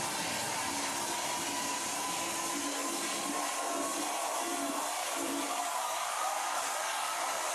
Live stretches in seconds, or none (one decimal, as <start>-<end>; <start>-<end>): 0.0-5.0